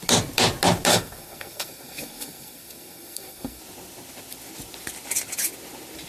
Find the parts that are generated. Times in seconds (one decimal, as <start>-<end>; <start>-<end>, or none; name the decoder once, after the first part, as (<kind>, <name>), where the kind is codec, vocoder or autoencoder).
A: 0.9-3.6 (codec, SNAC)